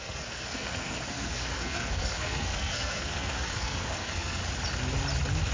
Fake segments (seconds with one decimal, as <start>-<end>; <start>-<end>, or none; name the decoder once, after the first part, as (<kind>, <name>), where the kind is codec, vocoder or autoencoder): 0.0-4.4 (codec, SNAC)